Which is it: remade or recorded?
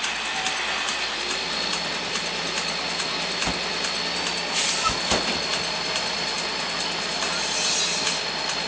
recorded